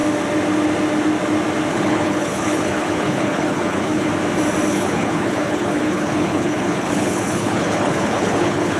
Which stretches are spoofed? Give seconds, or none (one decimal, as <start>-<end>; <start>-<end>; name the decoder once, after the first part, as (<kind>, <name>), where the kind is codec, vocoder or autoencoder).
1.7-4.1 (codec, HILCodec); 4.7-8.8